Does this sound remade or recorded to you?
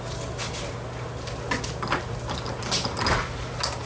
recorded